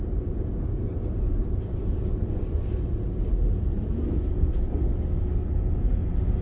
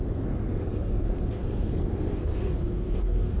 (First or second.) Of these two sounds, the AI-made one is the second